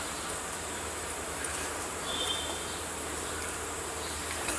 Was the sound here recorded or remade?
remade